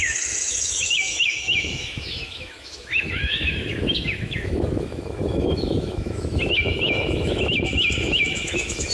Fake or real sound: fake